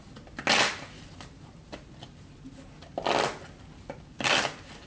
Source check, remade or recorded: recorded